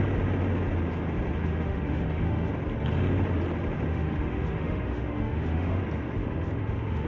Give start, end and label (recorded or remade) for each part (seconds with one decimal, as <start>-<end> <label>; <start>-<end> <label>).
0.0-1.4 recorded; 1.4-2.5 remade; 2.5-3.9 recorded; 3.9-5.8 remade; 5.8-6.2 recorded; 6.2-7.1 remade